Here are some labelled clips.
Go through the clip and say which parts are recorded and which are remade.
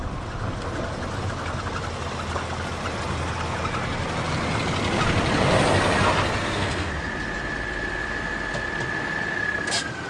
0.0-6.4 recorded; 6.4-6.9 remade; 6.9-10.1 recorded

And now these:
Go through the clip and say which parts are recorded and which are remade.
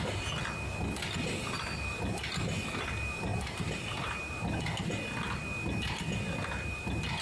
0.0-3.3 recorded; 3.3-4.3 remade; 4.3-7.2 recorded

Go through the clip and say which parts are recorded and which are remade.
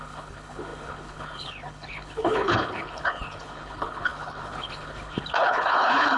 0.0-6.2 remade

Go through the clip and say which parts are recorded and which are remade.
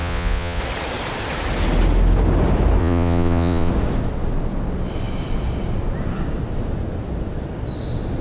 0.0-0.6 remade; 0.6-2.8 recorded; 2.8-3.7 remade; 3.7-8.2 recorded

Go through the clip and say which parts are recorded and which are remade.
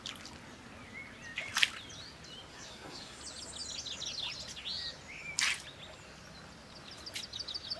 0.0-2.5 recorded; 2.5-3.2 remade; 3.2-7.8 recorded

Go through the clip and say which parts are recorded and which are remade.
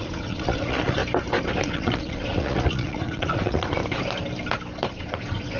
0.0-1.0 remade; 1.0-1.6 recorded; 1.6-3.8 remade; 3.8-4.9 recorded; 4.9-5.6 remade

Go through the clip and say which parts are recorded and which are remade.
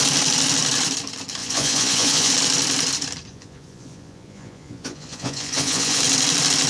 0.0-1.4 recorded; 1.4-2.3 remade; 2.3-3.3 recorded; 3.3-6.0 remade; 6.0-6.7 recorded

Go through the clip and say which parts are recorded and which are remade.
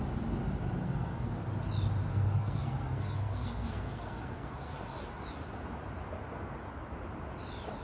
0.0-0.8 recorded; 0.8-1.3 remade; 1.3-2.1 recorded; 2.1-5.0 remade; 5.0-7.8 recorded